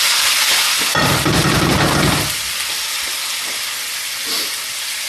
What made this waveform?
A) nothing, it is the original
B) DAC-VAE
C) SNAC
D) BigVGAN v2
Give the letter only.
A